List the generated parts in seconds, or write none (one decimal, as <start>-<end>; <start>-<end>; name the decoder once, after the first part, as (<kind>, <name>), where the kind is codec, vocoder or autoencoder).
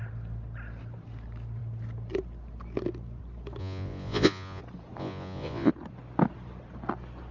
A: 3.6-4.6 (vocoder, Vocos); 5.0-5.7